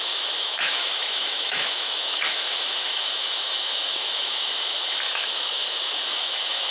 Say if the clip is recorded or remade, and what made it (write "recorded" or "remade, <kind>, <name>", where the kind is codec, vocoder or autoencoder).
remade, autoencoder, DAC-VAE